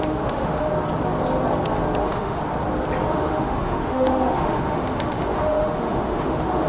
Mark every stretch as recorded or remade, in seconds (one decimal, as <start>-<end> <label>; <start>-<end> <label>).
0.0-0.7 remade; 0.7-2.0 recorded; 2.0-2.4 remade; 2.4-3.1 recorded; 3.1-6.7 remade